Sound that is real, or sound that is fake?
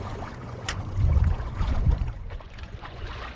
fake